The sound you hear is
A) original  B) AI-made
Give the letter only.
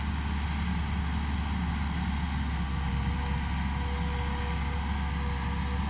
A